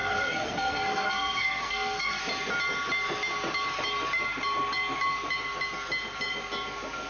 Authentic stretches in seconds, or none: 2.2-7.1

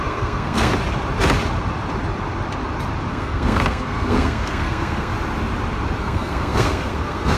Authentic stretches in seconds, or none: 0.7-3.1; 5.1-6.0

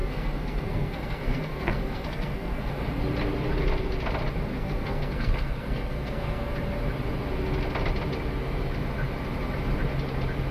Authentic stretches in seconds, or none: 2.7-4.5; 6.5-10.5